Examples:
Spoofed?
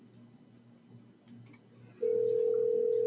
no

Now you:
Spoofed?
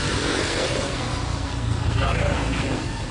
yes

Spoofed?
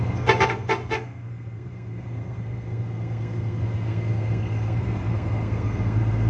yes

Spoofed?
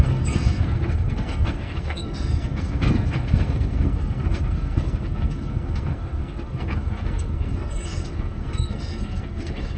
yes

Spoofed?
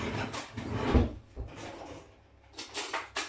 no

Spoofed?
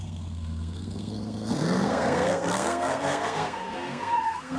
yes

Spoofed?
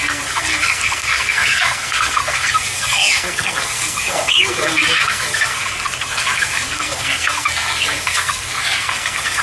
yes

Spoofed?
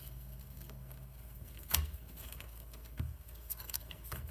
yes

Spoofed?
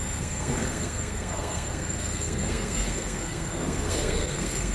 yes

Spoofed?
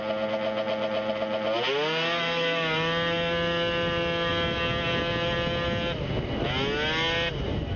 no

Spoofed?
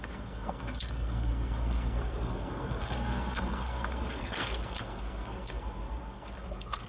yes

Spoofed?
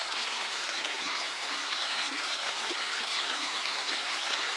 yes